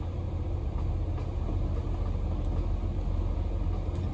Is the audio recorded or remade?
recorded